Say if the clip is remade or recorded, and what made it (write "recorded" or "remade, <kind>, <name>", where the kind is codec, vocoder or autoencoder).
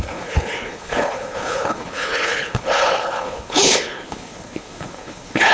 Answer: remade, codec, HILCodec